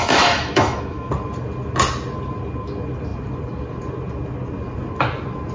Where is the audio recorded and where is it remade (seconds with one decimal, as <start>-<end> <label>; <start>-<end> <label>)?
0.0-1.1 remade; 1.1-5.5 recorded